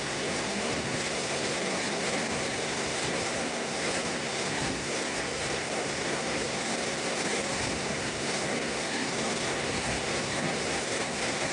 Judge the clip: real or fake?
fake